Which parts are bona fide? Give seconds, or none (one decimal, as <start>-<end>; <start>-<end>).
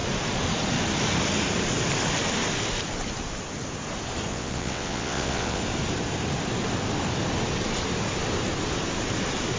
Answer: 0.0-4.3; 5.6-9.6